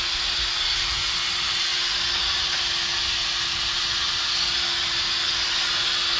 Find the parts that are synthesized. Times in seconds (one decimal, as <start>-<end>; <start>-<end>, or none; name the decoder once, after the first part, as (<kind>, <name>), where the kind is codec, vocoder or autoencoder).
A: none